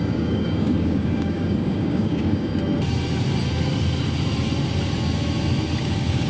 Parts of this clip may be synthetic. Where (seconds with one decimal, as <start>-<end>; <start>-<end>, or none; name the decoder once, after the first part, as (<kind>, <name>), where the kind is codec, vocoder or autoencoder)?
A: 0.0-2.5 (codec, DAC); 5.8-6.3